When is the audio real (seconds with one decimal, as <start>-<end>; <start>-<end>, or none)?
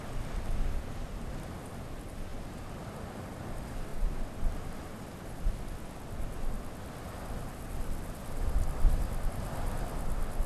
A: 0.0-10.5